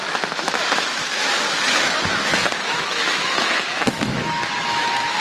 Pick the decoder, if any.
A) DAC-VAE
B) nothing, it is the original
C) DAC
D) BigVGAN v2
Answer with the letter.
A